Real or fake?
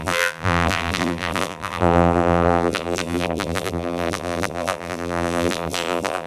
fake